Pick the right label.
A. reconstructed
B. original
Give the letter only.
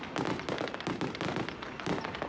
B